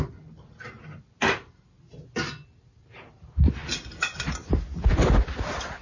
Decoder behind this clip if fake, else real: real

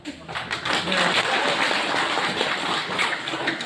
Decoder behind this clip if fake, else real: real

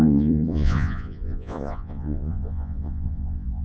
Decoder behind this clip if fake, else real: fake, vocoder, Vocos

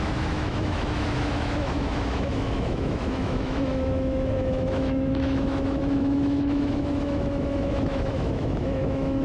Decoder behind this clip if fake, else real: fake, autoencoder, DAC-VAE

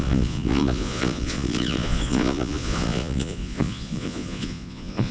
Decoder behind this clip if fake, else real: fake, vocoder, Vocos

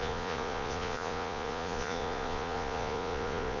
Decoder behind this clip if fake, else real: fake, vocoder, Vocos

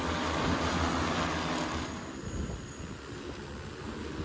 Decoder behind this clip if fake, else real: real